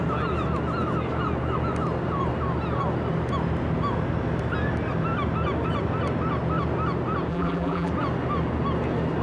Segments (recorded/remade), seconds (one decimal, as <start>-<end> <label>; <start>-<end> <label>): 0.0-7.3 recorded; 7.3-7.9 remade; 7.9-9.2 recorded